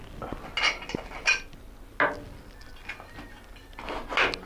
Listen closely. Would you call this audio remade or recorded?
recorded